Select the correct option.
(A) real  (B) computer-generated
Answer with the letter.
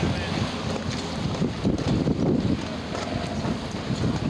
A